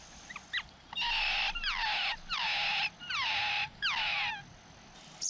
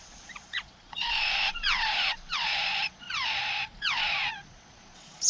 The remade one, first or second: second